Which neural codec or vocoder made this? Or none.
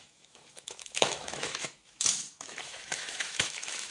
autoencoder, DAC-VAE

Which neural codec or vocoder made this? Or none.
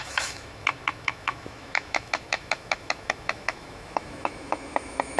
autoencoder, DAC-VAE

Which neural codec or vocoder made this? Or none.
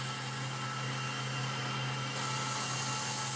none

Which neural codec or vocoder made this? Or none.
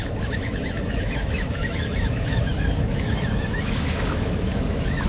autoencoder, DAC-VAE